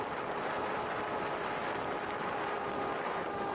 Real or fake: fake